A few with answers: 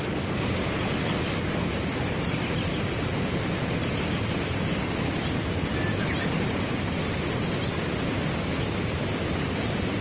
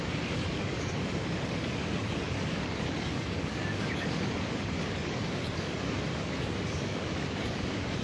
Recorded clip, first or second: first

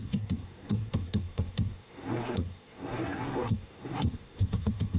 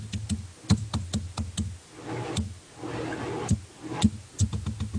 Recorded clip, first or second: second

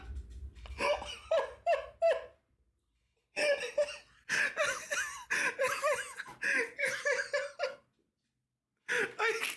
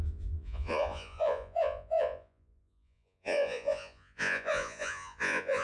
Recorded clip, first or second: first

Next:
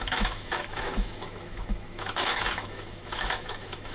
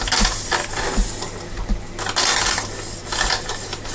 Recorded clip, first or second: second